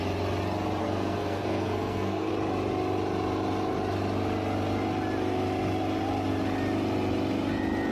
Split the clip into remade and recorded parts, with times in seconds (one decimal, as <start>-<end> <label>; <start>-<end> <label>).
0.0-0.8 recorded; 0.8-2.3 remade; 2.3-7.9 recorded